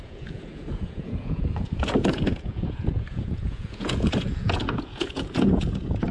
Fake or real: fake